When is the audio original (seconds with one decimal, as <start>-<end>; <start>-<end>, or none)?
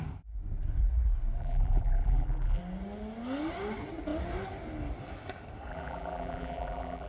0.0-1.4; 2.6-5.7